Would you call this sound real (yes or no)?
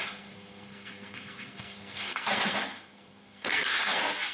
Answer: no